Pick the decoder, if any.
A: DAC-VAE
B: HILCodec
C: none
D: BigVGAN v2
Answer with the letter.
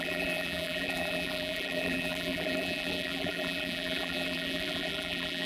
D